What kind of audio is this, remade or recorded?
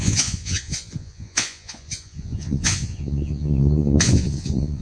remade